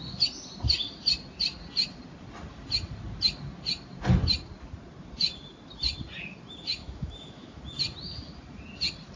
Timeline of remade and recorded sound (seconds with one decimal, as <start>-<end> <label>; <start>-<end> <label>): 0.0-6.8 recorded; 6.8-7.6 remade; 7.6-9.2 recorded